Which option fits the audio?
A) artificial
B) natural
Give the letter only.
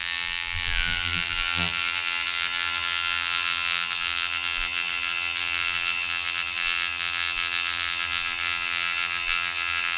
A